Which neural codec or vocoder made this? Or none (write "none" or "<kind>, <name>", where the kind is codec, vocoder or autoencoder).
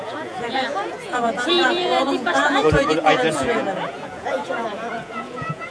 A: vocoder, Vocos